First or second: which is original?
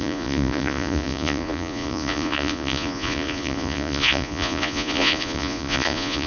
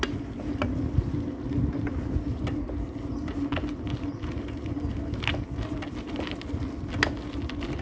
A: second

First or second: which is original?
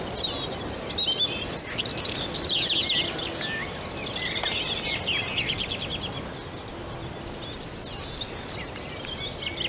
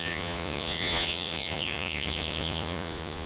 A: first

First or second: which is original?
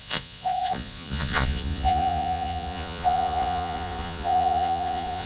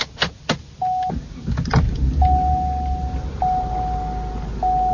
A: second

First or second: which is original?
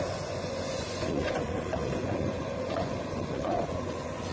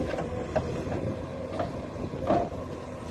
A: second